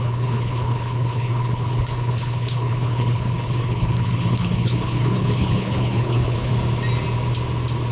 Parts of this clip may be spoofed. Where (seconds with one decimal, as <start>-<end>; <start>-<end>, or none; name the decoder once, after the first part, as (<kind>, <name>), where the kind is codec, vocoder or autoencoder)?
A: 0.0-6.5 (codec, HILCodec)